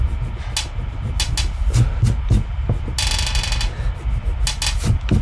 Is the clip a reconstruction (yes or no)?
no